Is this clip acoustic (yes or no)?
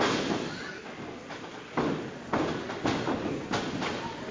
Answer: yes